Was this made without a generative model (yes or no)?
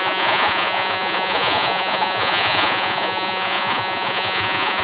no